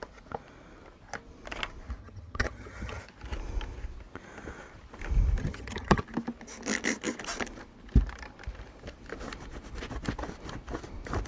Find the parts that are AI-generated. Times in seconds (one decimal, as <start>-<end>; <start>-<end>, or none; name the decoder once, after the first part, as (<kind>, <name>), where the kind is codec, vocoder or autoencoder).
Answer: 2.0-3.0 (vocoder, HiFi-GAN); 5.4-6.0